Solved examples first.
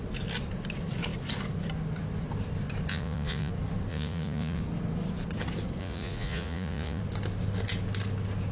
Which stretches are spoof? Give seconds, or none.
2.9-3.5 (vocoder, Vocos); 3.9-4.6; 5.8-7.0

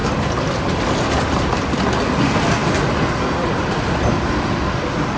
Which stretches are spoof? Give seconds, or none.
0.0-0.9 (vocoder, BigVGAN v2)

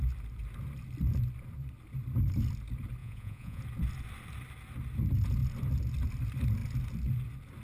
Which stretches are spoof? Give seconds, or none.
3.0-3.6 (vocoder, Vocos)